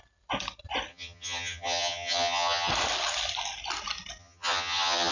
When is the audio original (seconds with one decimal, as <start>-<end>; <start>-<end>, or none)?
0.0-0.9; 2.7-4.2

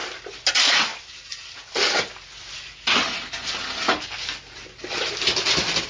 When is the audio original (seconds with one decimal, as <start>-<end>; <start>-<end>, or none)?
0.0-5.9

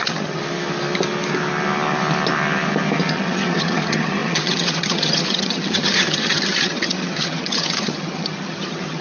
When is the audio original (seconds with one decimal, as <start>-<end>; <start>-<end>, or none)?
0.4-3.1

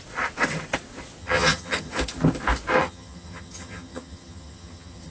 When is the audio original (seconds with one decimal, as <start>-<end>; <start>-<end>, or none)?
0.0-1.2; 1.9-2.8

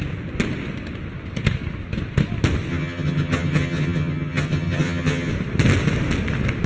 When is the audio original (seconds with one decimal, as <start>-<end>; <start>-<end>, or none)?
0.0-2.7; 5.3-6.7